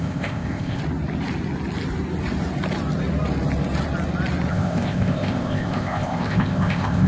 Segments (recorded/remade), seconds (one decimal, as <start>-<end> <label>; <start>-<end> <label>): 0.0-0.8 remade; 0.8-4.5 recorded; 4.5-7.1 remade